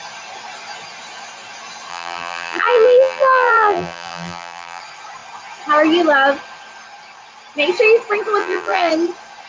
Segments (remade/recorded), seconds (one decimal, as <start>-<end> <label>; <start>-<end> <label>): 0.0-1.9 recorded; 1.9-4.8 remade; 4.8-8.4 recorded; 8.4-8.9 remade; 8.9-9.5 recorded